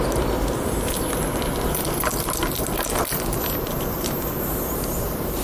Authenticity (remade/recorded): recorded